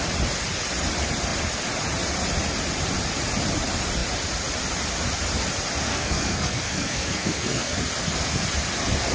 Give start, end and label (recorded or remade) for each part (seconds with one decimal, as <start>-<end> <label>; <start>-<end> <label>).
0.0-5.9 recorded; 5.9-7.8 remade; 7.8-9.1 recorded